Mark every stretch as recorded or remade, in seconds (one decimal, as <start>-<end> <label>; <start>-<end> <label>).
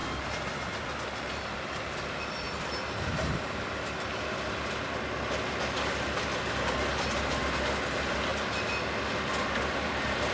0.0-10.3 recorded